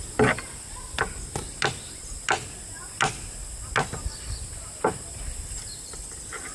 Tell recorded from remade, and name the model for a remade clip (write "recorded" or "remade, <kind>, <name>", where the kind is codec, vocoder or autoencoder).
recorded